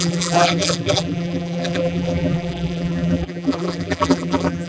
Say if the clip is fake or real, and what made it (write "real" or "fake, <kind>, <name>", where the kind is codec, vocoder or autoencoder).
fake, vocoder, BigVGAN v2